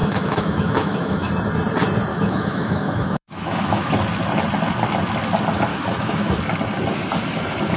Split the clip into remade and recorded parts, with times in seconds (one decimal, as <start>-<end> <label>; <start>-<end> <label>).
0.0-1.3 remade; 1.3-2.1 recorded; 2.1-3.9 remade; 3.9-5.7 recorded; 5.7-6.4 remade; 6.4-7.8 recorded